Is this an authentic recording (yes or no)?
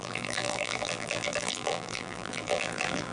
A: no